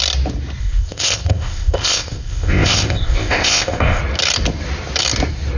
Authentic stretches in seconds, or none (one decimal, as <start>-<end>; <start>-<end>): 0.0-0.6; 4.0-5.6